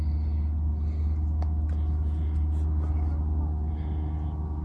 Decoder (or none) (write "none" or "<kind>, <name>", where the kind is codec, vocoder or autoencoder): none